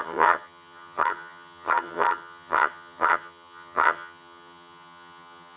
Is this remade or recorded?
remade